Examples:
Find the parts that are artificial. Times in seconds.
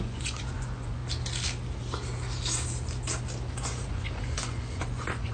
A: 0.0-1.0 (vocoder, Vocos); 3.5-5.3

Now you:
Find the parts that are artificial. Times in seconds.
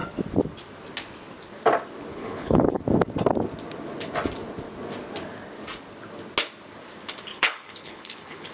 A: 2.1-2.8 (codec, HILCodec); 7.3-8.5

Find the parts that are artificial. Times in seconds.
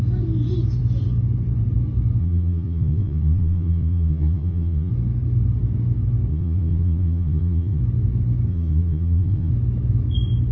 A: 2.2-4.9 (vocoder, Vocos); 6.3-7.8; 8.5-9.5